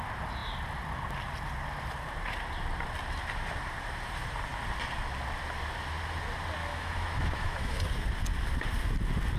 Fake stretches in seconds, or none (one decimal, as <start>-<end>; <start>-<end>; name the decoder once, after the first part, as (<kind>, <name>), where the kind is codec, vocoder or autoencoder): 6.6-7.8 (autoencoder, DAC-VAE)